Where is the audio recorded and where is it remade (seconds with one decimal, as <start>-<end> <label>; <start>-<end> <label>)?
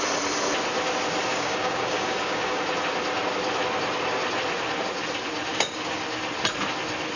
0.0-1.3 recorded; 1.3-2.6 remade; 2.6-5.5 recorded; 5.5-6.0 remade; 6.0-7.2 recorded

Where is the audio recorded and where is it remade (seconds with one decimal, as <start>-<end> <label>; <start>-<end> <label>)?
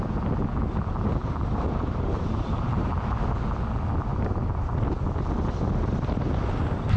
0.0-1.2 recorded; 1.2-2.9 remade; 2.9-4.1 recorded; 4.1-4.7 remade; 4.7-7.0 recorded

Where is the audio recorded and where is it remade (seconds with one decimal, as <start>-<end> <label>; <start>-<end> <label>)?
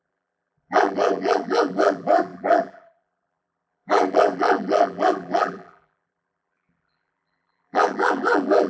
0.0-8.7 remade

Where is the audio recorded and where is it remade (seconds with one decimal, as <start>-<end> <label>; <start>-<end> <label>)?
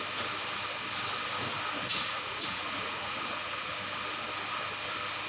0.0-1.9 recorded; 1.9-3.7 remade; 3.7-5.3 recorded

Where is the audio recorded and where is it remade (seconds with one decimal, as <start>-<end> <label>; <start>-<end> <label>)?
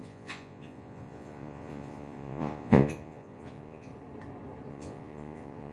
0.0-3.9 remade; 3.9-4.7 recorded; 4.7-5.7 remade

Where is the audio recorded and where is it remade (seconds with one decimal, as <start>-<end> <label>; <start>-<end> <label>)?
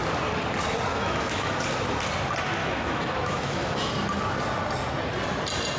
0.0-0.9 recorded; 0.9-1.6 remade; 1.6-2.6 recorded; 2.6-3.9 remade; 3.9-5.8 recorded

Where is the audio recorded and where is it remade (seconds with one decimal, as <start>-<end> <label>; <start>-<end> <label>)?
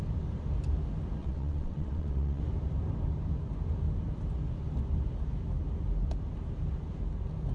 0.0-1.2 recorded; 1.2-2.4 remade; 2.4-7.5 recorded